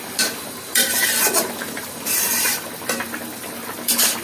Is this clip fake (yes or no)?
yes